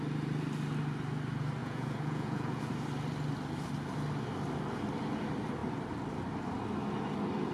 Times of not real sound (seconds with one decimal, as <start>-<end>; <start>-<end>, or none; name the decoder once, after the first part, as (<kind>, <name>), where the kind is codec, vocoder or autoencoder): 1.6-2.6 (vocoder, Vocos)